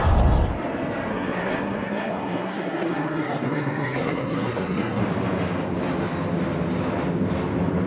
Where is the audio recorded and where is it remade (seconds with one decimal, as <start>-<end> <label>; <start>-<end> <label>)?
0.0-1.1 recorded; 1.1-5.0 remade; 5.0-7.9 recorded